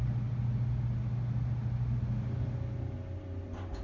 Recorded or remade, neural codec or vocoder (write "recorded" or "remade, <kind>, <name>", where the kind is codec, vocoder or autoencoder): recorded